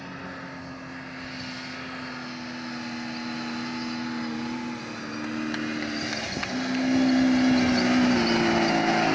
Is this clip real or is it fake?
real